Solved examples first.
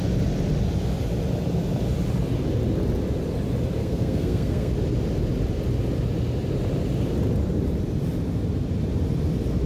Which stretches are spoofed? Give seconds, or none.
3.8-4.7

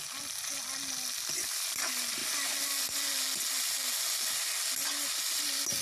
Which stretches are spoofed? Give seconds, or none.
none